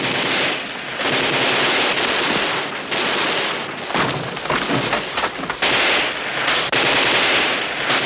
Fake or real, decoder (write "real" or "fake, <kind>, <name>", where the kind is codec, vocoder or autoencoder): real